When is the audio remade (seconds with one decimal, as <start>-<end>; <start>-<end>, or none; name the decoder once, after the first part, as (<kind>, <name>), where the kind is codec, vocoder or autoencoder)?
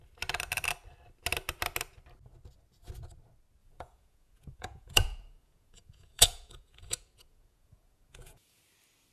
3.6-8.6 (vocoder, Vocos)